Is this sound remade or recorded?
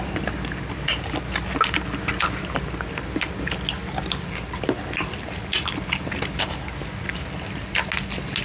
recorded